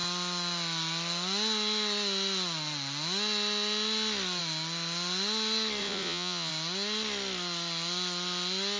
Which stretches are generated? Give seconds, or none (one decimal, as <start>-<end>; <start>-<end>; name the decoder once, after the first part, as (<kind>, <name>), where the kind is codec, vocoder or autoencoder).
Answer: 5.8-6.5 (vocoder, Vocos)